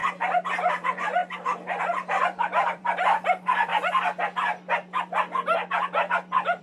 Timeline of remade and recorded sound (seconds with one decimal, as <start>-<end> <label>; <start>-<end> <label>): 0.0-0.7 recorded; 0.7-1.2 remade; 1.2-1.8 recorded; 1.8-3.7 remade; 3.7-6.6 recorded